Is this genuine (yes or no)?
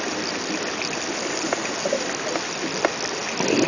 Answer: yes